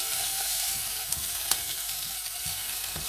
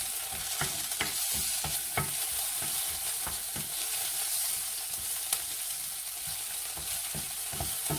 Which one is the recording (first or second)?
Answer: second